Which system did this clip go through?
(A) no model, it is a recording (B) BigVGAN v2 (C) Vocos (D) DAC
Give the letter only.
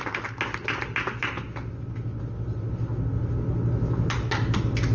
A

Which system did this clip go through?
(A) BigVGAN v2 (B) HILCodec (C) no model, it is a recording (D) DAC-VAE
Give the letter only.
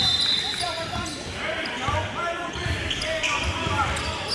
A